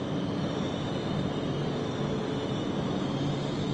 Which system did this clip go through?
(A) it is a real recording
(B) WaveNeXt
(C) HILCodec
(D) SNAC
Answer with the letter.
A